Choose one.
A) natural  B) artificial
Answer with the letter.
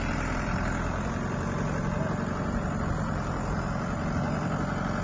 A